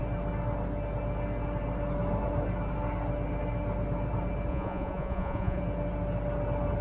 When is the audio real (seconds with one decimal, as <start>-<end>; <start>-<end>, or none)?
0.0-4.5; 5.6-6.8